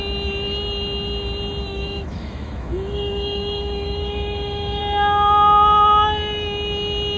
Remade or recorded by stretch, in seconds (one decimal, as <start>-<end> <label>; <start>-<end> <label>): 0.0-1.7 recorded; 1.7-4.8 remade; 4.8-7.2 recorded